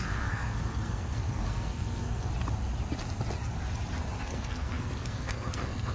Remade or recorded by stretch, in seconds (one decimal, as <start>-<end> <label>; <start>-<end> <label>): 0.0-2.3 remade; 2.3-4.2 recorded; 4.2-5.9 remade